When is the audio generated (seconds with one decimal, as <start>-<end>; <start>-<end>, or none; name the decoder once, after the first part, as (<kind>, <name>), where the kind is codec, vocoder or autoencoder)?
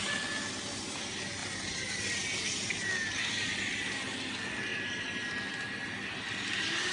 1.4-2.0 (vocoder, BigVGAN v2); 4.7-5.3